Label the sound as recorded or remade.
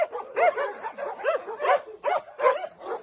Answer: recorded